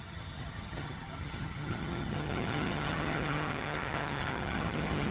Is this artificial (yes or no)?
yes